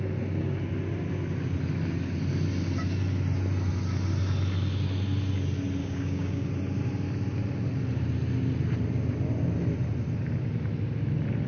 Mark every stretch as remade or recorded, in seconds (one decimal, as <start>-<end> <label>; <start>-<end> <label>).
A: 0.0-5.8 recorded; 5.8-6.5 remade; 6.5-11.5 recorded